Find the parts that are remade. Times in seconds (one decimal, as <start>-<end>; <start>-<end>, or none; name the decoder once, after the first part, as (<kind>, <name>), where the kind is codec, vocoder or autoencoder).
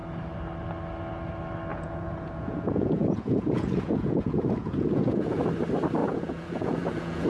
1.7-5.4 (vocoder, Vocos); 6.0-7.3